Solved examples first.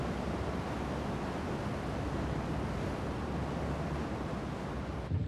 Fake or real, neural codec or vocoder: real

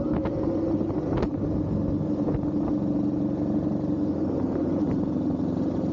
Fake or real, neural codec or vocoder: real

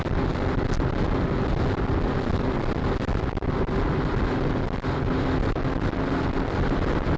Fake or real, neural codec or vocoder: real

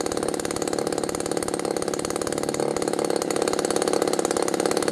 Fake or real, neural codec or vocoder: real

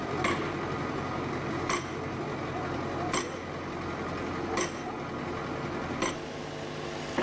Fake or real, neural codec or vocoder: real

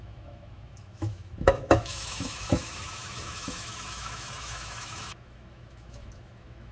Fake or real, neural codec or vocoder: fake, autoencoder, DAC-VAE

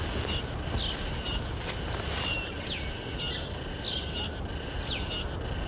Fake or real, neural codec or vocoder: real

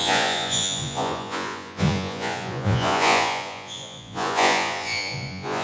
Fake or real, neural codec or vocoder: fake, vocoder, Vocos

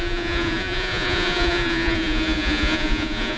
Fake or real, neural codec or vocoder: fake, vocoder, Vocos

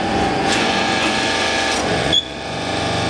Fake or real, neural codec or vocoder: fake, vocoder, Vocos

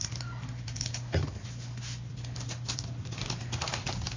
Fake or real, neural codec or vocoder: real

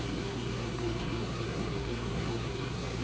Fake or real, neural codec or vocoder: fake, codec, SNAC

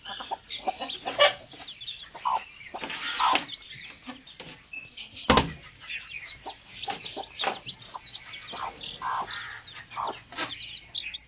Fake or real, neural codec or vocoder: real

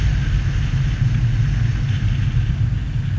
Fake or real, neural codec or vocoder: real